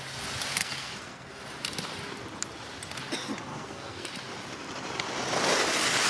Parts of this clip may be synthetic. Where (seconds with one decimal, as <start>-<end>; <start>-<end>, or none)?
0.6-1.4; 3.5-4.1